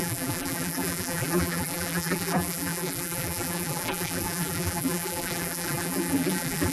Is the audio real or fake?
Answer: fake